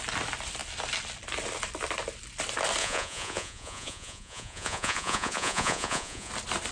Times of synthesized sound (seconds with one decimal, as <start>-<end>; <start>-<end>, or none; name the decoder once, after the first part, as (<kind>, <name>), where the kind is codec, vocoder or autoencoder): 2.8-6.3 (vocoder, Vocos)